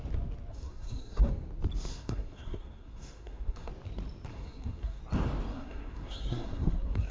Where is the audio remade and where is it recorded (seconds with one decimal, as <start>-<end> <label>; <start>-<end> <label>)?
0.0-0.5 recorded; 0.5-1.3 remade; 1.3-1.9 recorded; 1.9-3.7 remade; 3.7-4.3 recorded; 4.3-5.0 remade; 5.0-5.5 recorded; 5.5-7.1 remade